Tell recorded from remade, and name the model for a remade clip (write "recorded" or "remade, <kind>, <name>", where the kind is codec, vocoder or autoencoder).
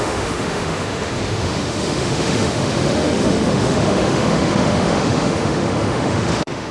remade, autoencoder, DAC-VAE